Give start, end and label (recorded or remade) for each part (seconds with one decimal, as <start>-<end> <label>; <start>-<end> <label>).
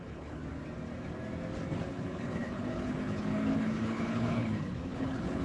0.0-0.4 remade; 0.4-1.9 recorded; 1.9-5.4 remade